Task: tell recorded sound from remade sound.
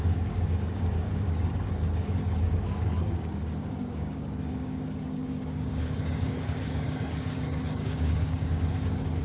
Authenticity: remade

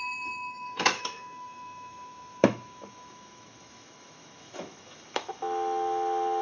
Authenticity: remade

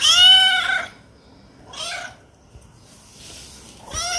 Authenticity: recorded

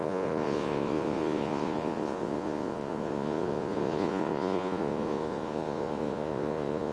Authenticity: remade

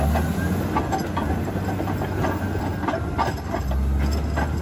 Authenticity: recorded